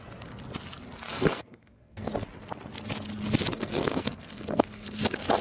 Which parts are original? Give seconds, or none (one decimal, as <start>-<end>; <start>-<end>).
0.0-1.1; 2.1-3.5; 5.0-5.4